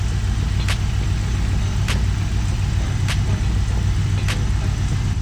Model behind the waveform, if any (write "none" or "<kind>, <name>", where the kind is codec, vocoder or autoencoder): none